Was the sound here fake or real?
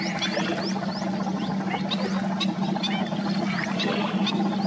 real